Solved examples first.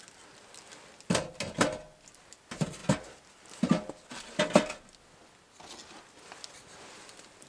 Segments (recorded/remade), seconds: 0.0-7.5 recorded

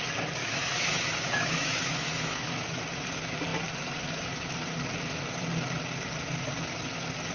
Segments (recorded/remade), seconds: 0.0-0.4 recorded; 0.4-2.8 remade; 2.8-7.3 recorded